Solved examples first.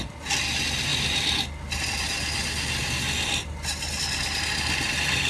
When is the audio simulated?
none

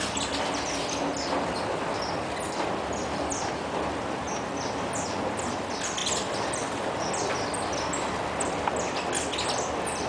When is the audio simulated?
none

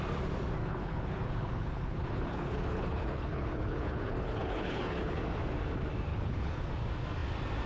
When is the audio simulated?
0.6-5.2 (codec, HILCodec); 6.1-6.7